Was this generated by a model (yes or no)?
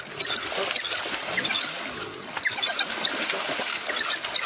no